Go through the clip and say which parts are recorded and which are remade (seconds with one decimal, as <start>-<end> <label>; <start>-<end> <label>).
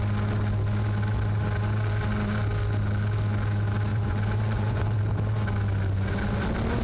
0.0-3.9 recorded; 3.9-5.0 remade; 5.0-6.8 recorded